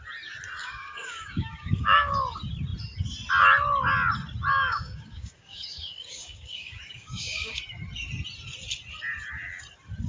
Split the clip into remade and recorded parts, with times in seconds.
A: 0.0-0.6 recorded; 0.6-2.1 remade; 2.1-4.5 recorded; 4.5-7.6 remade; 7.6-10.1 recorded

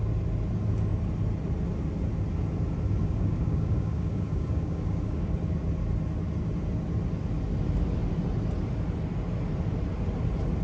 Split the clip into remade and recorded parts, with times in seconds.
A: 0.0-3.0 recorded; 3.0-5.3 remade; 5.3-10.6 recorded

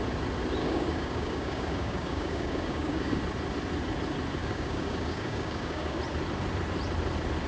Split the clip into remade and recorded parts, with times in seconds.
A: 0.0-0.6 recorded; 0.6-3.2 remade; 3.2-4.4 recorded; 4.4-6.0 remade; 6.0-7.5 recorded